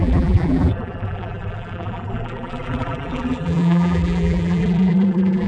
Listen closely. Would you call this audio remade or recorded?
remade